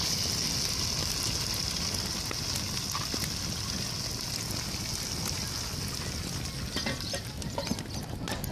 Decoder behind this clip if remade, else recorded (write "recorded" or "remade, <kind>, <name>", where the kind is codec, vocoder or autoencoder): recorded